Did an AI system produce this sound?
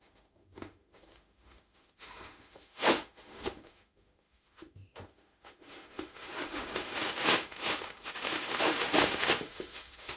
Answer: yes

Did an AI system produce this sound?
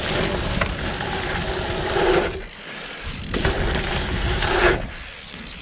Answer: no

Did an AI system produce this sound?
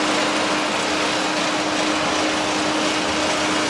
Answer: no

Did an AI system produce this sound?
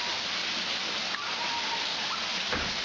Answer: no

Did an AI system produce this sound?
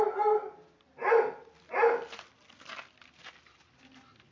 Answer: no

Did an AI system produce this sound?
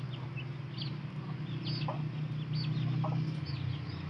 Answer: no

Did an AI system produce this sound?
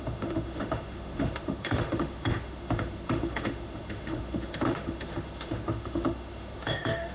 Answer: yes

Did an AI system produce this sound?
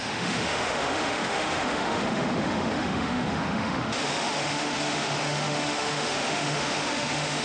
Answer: yes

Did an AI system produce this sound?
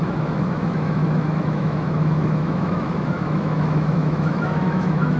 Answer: yes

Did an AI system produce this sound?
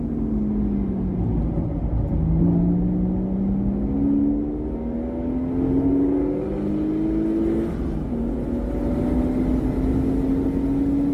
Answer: no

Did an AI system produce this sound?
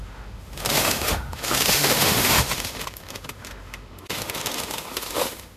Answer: yes